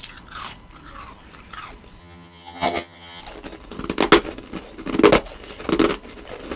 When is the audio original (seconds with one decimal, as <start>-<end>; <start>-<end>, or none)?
0.0-2.0; 3.2-6.6